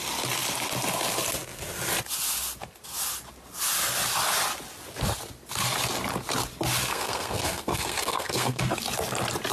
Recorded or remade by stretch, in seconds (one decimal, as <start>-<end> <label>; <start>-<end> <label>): 0.0-6.9 recorded; 6.9-8.6 remade; 8.6-9.5 recorded